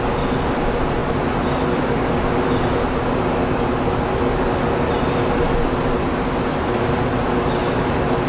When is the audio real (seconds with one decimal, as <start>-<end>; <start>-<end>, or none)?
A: 0.0-8.3